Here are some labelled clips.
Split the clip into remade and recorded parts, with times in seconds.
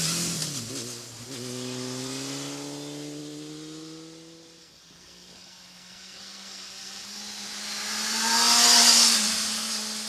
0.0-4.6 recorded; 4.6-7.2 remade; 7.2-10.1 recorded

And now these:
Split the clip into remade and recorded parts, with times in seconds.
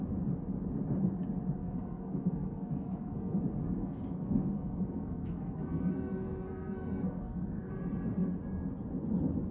0.0-1.6 recorded; 1.6-3.4 remade; 3.4-3.8 recorded; 3.8-7.7 remade; 7.7-9.5 recorded